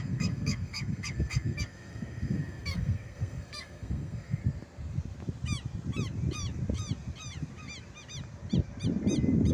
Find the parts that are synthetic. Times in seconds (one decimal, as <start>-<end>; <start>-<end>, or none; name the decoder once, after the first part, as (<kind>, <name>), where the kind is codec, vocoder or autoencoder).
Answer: 0.0-4.4 (codec, SNAC)